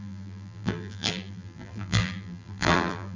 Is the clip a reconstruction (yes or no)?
yes